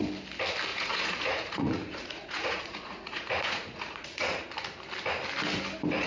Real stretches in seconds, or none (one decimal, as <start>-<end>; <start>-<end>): 0.0-0.7; 4.4-6.1